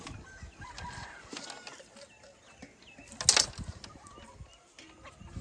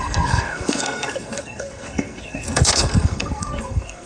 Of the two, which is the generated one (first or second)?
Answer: second